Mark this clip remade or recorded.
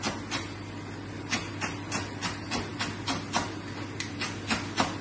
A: recorded